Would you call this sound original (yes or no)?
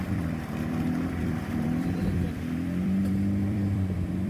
no